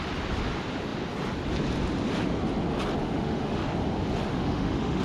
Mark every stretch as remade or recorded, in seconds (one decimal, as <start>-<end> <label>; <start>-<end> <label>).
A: 0.0-3.0 recorded; 3.0-3.6 remade; 3.6-4.3 recorded; 4.3-5.0 remade